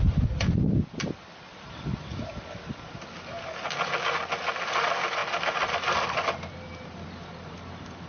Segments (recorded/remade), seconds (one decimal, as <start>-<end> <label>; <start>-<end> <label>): 0.0-8.1 recorded